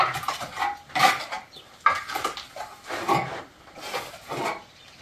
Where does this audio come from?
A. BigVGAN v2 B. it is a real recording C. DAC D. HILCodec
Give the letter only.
B